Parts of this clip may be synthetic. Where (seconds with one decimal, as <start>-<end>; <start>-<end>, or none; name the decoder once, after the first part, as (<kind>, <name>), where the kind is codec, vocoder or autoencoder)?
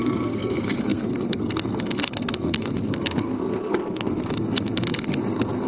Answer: 0.0-5.7 (codec, SNAC)